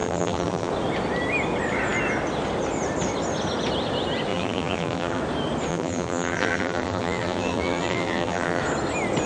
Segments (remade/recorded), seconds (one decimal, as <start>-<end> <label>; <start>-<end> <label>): 0.0-0.7 remade; 0.7-4.3 recorded; 4.3-5.2 remade; 5.2-5.7 recorded; 5.7-8.6 remade; 8.6-9.3 recorded